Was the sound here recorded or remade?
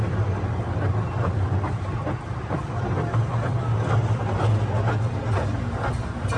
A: recorded